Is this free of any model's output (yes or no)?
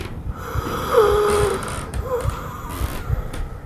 yes